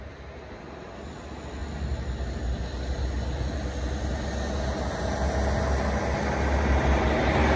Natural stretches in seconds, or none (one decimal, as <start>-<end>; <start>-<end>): 0.0-7.6